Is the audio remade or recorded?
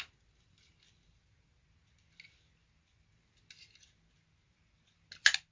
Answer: recorded